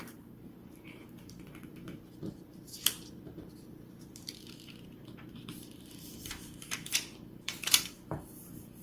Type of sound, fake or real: fake